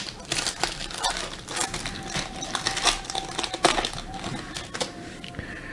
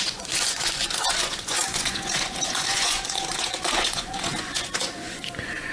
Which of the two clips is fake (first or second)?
second